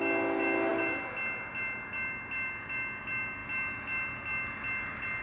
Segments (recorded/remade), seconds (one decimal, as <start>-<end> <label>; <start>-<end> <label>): 0.0-5.2 recorded